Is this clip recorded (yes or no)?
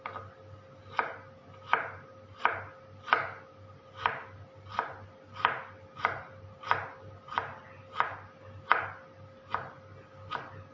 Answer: yes